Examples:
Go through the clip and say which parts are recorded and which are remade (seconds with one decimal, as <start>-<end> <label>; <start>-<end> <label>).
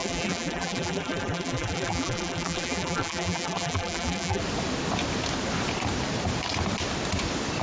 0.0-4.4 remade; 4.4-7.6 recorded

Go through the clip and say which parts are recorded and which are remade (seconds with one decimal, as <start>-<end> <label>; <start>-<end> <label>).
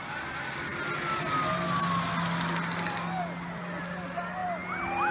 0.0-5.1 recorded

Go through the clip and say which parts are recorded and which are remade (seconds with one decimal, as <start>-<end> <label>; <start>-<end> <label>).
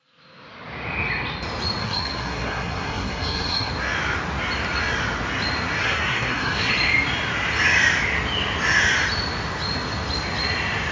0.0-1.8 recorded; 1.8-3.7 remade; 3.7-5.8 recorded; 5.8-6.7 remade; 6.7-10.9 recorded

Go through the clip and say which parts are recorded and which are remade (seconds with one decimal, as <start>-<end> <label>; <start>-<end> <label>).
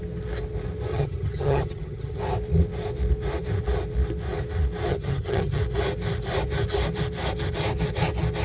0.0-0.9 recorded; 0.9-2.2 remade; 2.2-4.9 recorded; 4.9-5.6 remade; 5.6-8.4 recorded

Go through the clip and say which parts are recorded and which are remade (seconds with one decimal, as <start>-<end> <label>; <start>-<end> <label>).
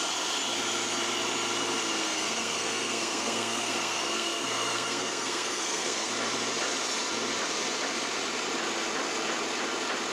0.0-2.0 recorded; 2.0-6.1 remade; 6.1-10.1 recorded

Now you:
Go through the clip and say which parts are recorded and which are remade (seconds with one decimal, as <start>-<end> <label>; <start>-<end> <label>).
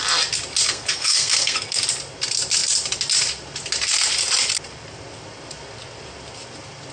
0.0-0.7 recorded; 0.7-1.8 remade; 1.8-6.9 recorded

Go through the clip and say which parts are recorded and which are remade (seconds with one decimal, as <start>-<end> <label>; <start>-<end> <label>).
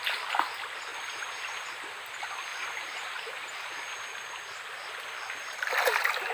0.0-0.9 recorded; 0.9-1.6 remade; 1.6-2.5 recorded; 2.5-3.7 remade; 3.7-6.3 recorded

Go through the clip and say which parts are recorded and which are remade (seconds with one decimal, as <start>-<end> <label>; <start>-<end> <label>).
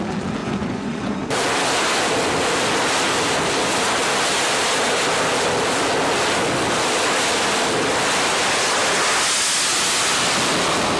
0.0-0.4 recorded; 0.4-1.2 remade; 1.2-11.0 recorded